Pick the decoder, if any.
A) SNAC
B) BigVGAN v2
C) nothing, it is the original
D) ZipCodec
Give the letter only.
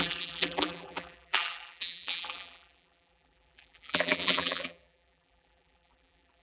B